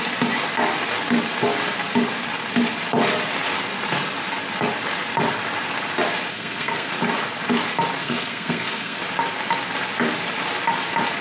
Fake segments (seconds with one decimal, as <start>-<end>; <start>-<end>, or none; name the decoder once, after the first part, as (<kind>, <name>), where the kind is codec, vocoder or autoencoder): 6.3-6.9 (codec, SNAC); 8.0-9.0